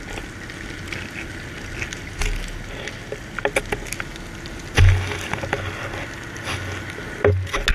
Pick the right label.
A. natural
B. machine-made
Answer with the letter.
A